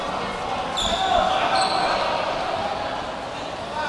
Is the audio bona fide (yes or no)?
yes